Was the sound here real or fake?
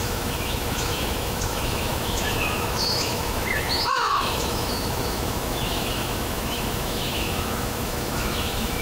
fake